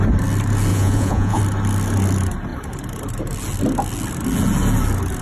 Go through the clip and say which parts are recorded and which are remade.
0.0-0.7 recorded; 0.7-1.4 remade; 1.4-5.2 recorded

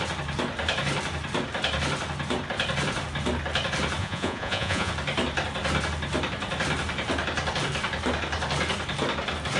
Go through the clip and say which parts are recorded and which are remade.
0.0-4.0 recorded; 4.0-4.9 remade; 4.9-9.6 recorded

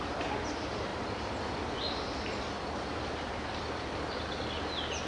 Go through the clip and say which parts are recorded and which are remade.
0.0-5.1 recorded

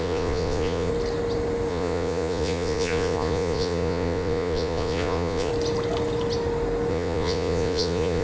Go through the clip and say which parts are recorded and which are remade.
0.0-0.9 remade; 0.9-1.7 recorded; 1.7-5.5 remade; 5.5-6.9 recorded; 6.9-8.2 remade